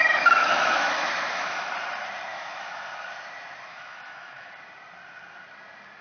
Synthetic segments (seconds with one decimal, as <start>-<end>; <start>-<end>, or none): 0.0-1.7; 2.3-2.9; 3.7-4.5

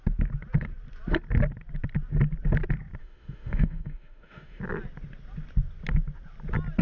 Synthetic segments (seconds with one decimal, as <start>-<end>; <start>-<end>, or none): 3.0-4.6